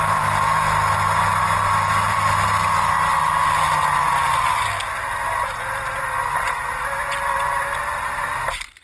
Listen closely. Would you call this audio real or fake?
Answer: real